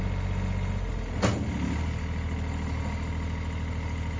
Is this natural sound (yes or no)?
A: yes